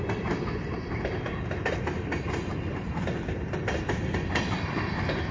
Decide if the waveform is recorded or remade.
recorded